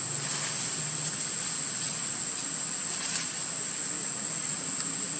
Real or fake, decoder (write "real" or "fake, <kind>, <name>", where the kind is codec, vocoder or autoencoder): real